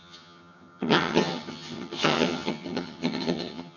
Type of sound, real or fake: fake